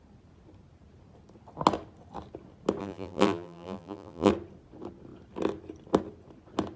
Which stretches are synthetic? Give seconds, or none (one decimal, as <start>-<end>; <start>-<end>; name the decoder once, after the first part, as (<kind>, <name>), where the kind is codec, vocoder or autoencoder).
2.8-4.3 (vocoder, BigVGAN v2)